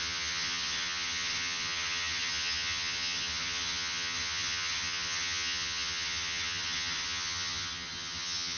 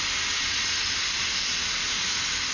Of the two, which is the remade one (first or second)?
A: first